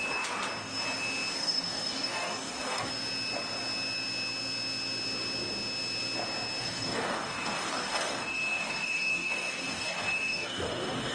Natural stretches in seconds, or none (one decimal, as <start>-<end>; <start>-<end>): 0.0-1.3; 2.9-6.6